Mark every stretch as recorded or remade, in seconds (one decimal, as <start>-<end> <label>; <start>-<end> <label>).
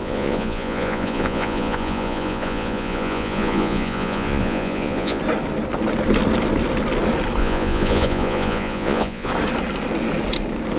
0.0-5.2 remade; 5.2-7.4 recorded; 7.4-9.3 remade; 9.3-10.8 recorded